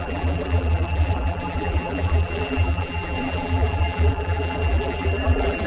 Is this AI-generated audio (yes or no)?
yes